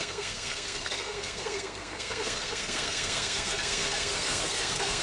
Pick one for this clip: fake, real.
fake